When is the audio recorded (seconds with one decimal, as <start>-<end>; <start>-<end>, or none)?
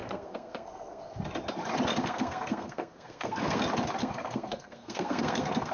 1.1-2.0; 3.6-4.0